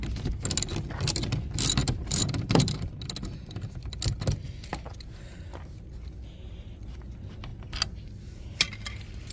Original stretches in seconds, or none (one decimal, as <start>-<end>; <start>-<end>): 0.0-1.8; 2.9-9.3